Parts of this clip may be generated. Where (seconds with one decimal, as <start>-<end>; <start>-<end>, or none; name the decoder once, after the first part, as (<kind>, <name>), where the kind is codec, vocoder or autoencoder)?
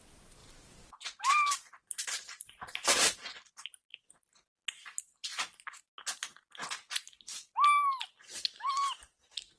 0.4-4.3 (vocoder, BigVGAN v2)